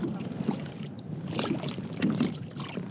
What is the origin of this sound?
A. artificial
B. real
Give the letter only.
B